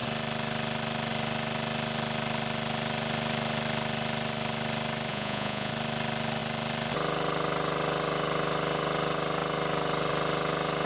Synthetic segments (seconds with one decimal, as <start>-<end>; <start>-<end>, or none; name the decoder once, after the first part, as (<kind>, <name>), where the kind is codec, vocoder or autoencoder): 5.1-5.7 (vocoder, Vocos)